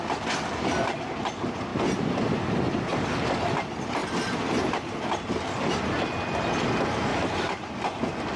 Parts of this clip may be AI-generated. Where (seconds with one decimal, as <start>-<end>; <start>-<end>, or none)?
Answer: 7.1-7.7